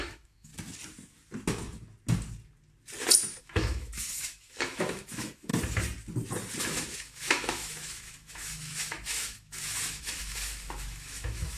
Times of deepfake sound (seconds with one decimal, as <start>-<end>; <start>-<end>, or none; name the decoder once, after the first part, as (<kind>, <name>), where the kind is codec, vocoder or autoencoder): 0.0-0.5 (autoencoder, DAC-VAE); 3.4-5.5; 6.6-11.6